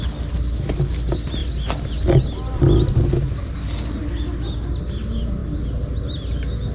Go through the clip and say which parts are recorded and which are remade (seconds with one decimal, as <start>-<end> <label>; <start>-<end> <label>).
0.0-6.7 recorded